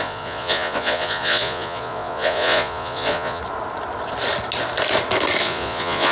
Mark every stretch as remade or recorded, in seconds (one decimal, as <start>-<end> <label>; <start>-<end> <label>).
0.0-3.4 remade; 3.4-5.4 recorded; 5.4-6.1 remade